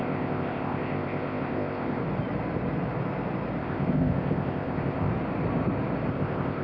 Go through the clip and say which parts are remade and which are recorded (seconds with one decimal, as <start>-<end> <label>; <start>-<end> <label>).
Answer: 0.0-2.0 remade; 2.0-3.6 recorded; 3.6-5.1 remade; 5.1-6.1 recorded; 6.1-6.6 remade